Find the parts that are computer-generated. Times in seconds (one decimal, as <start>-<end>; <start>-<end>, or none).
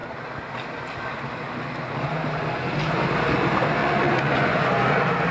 3.8-4.7